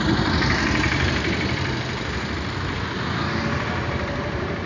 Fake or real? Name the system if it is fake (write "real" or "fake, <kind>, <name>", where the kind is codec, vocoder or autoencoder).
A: real